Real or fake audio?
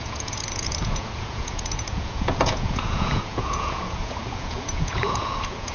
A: fake